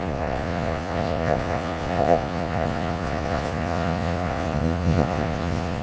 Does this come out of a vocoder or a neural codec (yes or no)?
yes